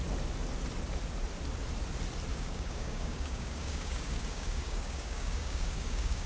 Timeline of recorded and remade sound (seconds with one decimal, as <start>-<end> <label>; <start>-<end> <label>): 0.0-2.3 recorded; 2.3-6.3 remade

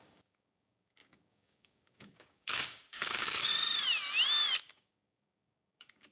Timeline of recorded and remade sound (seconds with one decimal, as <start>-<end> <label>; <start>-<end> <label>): 0.0-3.5 remade; 3.5-4.6 recorded; 4.6-6.1 remade

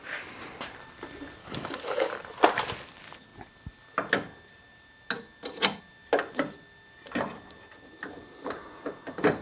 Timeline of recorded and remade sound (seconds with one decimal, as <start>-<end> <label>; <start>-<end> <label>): 0.0-1.4 recorded; 1.4-2.2 remade; 2.2-9.4 recorded

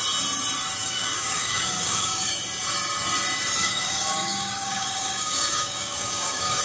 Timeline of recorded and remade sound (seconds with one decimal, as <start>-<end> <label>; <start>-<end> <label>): 0.0-0.8 recorded; 0.8-2.3 remade; 2.3-3.6 recorded; 3.6-6.6 remade

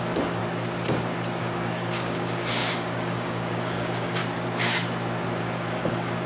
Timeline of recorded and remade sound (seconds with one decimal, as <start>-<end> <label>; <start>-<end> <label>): 0.0-0.4 remade; 0.4-1.4 recorded; 1.4-4.2 remade; 4.2-5.4 recorded; 5.4-6.3 remade